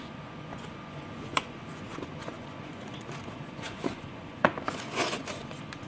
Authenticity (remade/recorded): remade